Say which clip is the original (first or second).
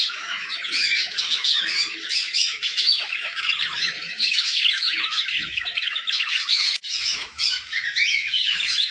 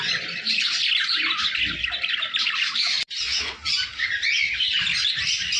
second